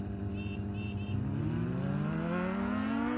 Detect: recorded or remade recorded